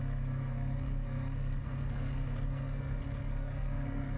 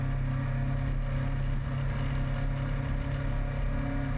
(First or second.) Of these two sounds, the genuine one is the second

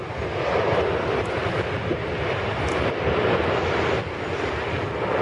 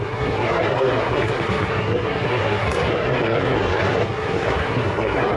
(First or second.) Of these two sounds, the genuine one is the first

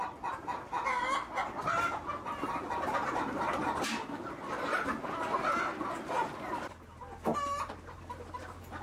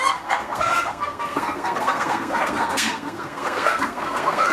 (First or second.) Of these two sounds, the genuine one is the first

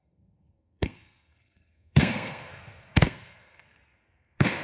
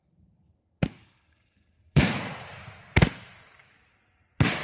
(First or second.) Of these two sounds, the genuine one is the second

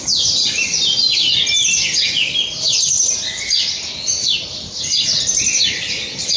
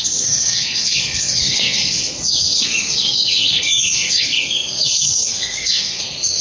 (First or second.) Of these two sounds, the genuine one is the first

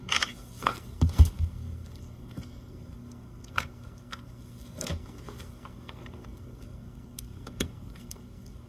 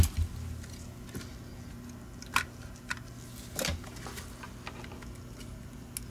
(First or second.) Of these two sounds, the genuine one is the second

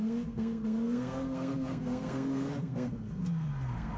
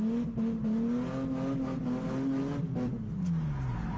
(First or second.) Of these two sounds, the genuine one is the second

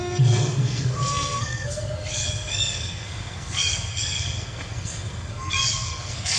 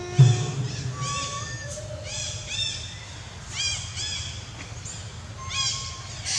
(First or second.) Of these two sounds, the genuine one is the second